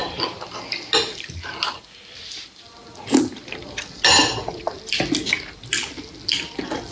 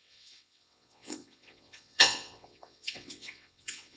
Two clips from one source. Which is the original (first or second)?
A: first